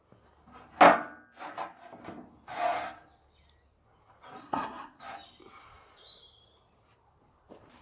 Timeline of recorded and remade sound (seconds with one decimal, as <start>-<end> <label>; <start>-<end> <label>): 0.0-4.4 recorded; 4.4-5.0 remade; 5.0-7.8 recorded